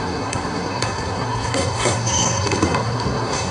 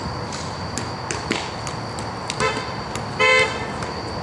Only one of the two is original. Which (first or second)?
second